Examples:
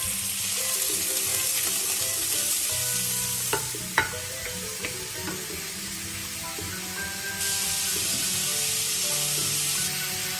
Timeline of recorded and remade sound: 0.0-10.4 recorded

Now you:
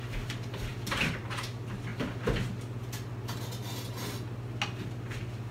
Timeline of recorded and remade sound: 0.0-5.5 recorded

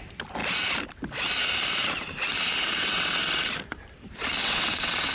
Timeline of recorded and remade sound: 0.0-2.7 recorded; 2.7-3.4 remade; 3.4-4.4 recorded; 4.4-5.1 remade

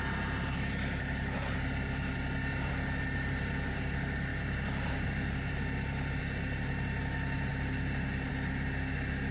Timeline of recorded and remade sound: 0.0-9.3 recorded

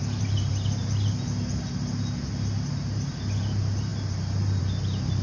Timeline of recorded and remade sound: 0.0-5.2 recorded

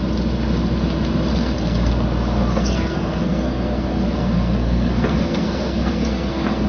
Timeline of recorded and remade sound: 0.0-1.3 recorded; 1.3-1.9 remade; 1.9-2.5 recorded; 2.5-6.7 remade